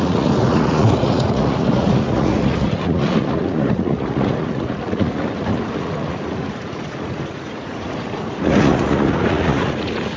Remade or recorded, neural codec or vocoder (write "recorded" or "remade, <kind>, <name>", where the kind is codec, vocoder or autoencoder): remade, vocoder, Vocos